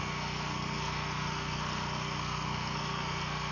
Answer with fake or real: fake